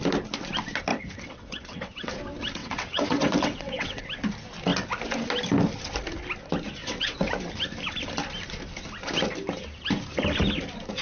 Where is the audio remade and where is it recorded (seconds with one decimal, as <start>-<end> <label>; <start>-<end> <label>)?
0.0-0.9 recorded; 0.9-2.1 remade; 2.1-2.6 recorded; 2.6-4.0 remade; 4.0-6.8 recorded; 6.8-7.3 remade; 7.3-11.0 recorded